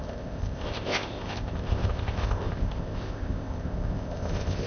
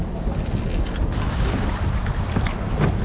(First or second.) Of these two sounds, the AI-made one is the first